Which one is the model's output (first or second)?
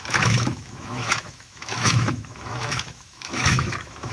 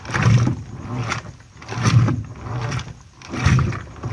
first